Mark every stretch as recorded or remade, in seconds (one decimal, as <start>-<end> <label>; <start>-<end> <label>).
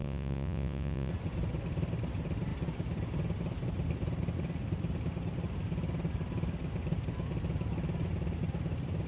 0.0-1.1 remade; 1.1-9.1 recorded